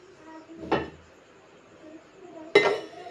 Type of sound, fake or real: real